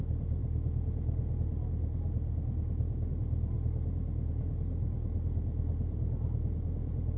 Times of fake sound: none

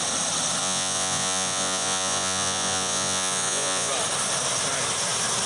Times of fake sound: 0.6-3.9 (vocoder, Vocos)

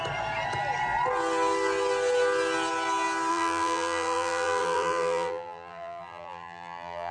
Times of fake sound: 3.3-7.1 (vocoder, BigVGAN v2)

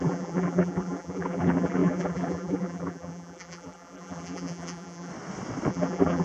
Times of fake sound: 0.0-5.1 (vocoder, BigVGAN v2); 5.7-6.2